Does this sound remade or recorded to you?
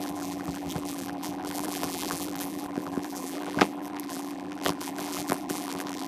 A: remade